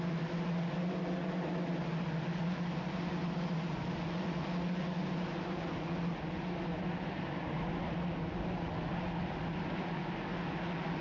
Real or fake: real